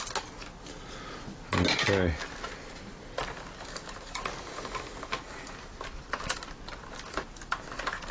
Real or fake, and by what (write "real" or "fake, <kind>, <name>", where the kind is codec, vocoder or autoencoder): real